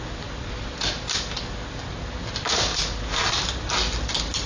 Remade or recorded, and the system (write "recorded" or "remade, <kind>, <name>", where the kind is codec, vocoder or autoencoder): recorded